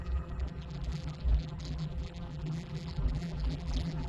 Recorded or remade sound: remade